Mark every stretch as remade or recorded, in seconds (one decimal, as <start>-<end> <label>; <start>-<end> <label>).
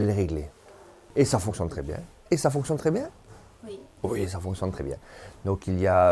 0.0-1.5 recorded; 1.5-3.8 remade; 3.8-4.8 recorded; 4.8-6.1 remade